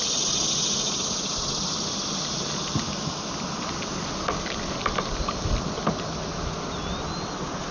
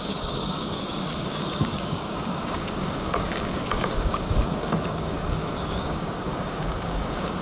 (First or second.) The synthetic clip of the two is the second